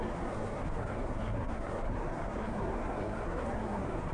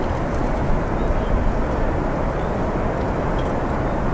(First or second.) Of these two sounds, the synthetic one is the first